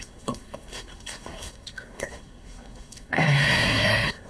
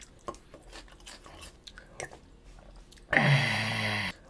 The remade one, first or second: first